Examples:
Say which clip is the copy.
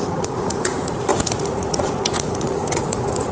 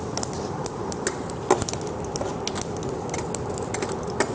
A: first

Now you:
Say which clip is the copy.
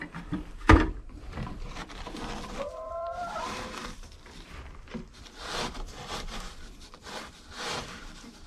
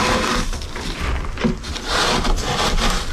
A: first